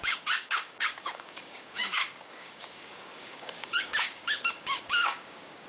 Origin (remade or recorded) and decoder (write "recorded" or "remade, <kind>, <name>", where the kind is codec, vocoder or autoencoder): remade, codec, DAC